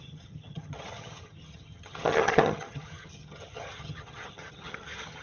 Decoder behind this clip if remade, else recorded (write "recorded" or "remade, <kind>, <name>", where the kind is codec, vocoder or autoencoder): remade, vocoder, HiFi-GAN